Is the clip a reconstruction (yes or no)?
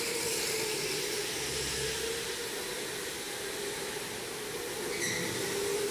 no